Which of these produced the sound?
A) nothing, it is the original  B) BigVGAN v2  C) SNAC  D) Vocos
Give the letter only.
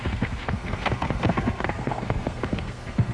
C